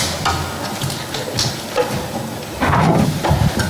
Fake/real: real